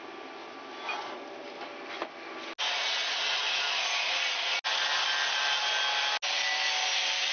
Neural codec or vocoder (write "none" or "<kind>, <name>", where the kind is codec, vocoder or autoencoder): none